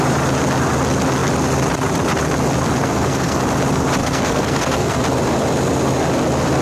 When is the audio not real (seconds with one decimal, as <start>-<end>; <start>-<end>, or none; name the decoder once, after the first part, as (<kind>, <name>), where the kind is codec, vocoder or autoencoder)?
2.8-3.4 (codec, SNAC); 4.0-5.0